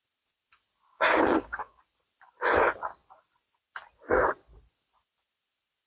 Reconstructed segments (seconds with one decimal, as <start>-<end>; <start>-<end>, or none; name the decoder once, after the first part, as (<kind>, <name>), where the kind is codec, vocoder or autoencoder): 0.9-1.8 (codec, DAC)